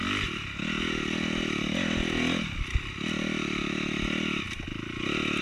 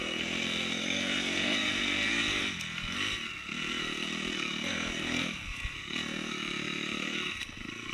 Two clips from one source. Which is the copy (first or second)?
second